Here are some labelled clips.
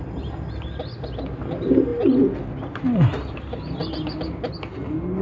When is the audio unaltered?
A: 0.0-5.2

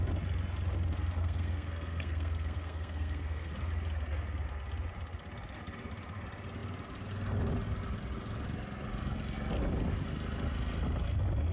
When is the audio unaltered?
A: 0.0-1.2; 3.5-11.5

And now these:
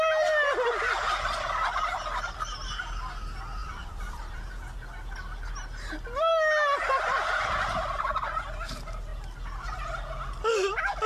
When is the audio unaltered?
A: 0.0-3.6; 4.5-11.1

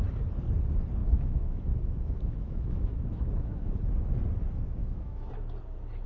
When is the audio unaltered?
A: 0.0-1.0; 3.7-4.8; 5.3-6.1

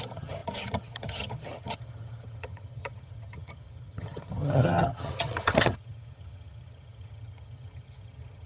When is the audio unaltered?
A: none

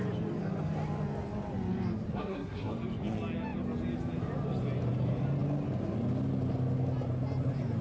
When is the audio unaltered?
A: 0.0-2.1; 2.7-7.8

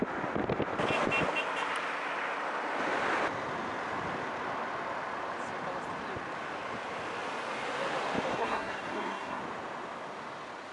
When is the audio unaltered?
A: 0.0-8.3; 9.4-10.7

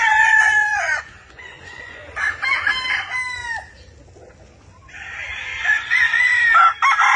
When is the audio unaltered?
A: 2.0-5.6; 6.3-7.2